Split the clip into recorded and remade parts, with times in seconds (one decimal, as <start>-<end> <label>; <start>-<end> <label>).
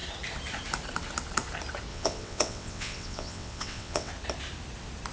0.0-1.9 recorded; 1.9-4.1 remade; 4.1-5.1 recorded